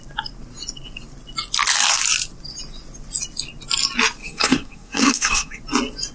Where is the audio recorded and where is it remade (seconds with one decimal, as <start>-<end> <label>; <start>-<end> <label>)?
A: 0.0-4.2 recorded; 4.2-5.6 remade; 5.6-6.1 recorded